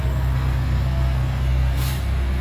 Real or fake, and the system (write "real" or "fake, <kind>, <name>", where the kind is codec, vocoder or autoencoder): fake, codec, SNAC